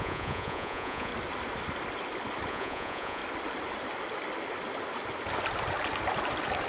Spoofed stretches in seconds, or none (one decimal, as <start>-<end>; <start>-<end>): 0.0-1.1; 2.5-3.2